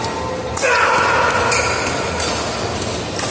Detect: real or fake real